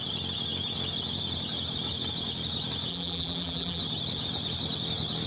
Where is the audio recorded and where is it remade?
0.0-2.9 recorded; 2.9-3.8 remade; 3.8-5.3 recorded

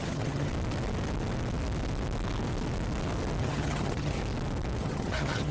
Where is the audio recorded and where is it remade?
0.0-0.5 remade; 0.5-3.4 recorded; 3.4-4.2 remade; 4.2-4.8 recorded; 4.8-5.5 remade

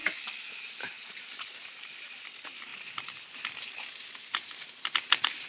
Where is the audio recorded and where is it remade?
0.0-5.5 recorded

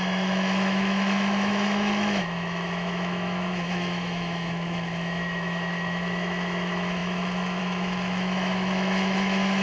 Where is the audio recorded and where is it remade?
0.0-9.6 remade

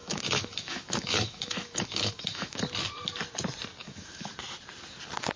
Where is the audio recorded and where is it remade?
0.0-2.6 remade; 2.6-3.8 recorded; 3.8-4.3 remade; 4.3-5.4 recorded

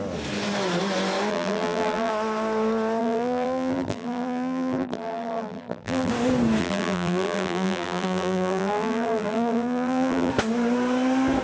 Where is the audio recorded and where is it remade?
0.0-1.3 recorded; 1.3-2.1 remade; 2.1-3.0 recorded; 3.0-6.1 remade; 6.1-6.6 recorded; 6.6-10.3 remade; 10.3-11.4 recorded

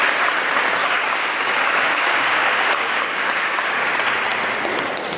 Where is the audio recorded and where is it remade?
0.0-0.8 recorded; 0.8-3.9 remade; 3.9-5.2 recorded